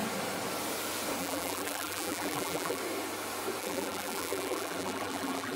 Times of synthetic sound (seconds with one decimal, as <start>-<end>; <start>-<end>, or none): 1.2-2.8; 3.6-5.6